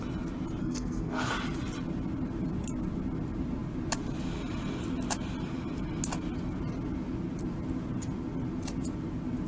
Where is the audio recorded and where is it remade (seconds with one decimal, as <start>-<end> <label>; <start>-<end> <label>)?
0.0-0.6 recorded; 0.6-1.3 remade; 1.3-9.5 recorded

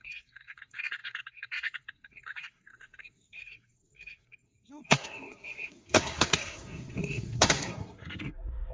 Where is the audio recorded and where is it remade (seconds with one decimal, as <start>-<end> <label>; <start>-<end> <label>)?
0.0-8.7 remade